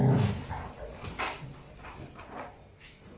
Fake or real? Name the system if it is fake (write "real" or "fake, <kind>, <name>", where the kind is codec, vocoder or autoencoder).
real